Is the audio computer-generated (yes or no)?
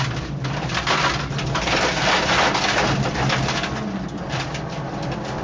no